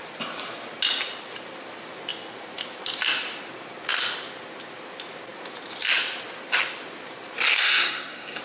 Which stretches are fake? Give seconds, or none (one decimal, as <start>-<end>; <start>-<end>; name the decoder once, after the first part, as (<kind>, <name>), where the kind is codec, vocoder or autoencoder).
7.5-8.4 (codec, SNAC)